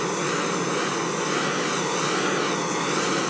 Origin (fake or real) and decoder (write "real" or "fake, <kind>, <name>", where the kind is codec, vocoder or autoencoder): real